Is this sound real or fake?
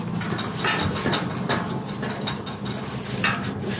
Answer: real